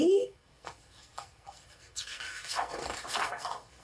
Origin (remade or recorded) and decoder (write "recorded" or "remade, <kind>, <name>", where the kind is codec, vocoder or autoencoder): remade, codec, SNAC